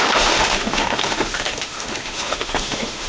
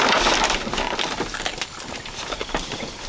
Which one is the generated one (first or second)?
first